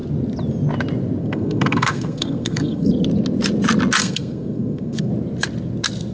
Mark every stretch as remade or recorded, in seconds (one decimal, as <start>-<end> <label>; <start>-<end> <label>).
0.0-1.2 recorded; 1.2-2.9 remade; 2.9-4.0 recorded; 4.0-5.1 remade; 5.1-6.1 recorded